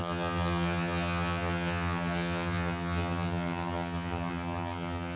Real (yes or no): no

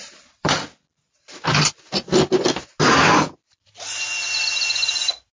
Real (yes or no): yes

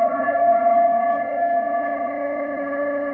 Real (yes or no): no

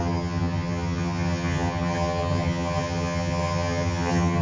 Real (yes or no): no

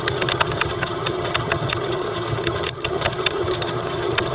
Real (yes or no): no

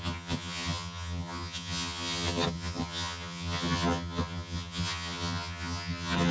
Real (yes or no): no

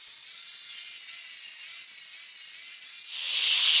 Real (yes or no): yes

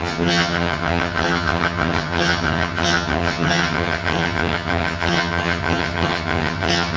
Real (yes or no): no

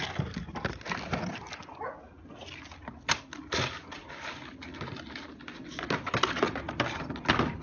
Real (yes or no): yes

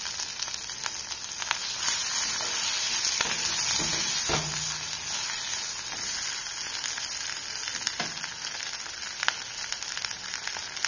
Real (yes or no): yes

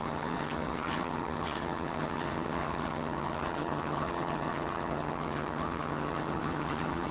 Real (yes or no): no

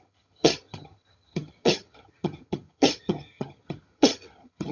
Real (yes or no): no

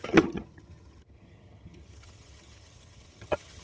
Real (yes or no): no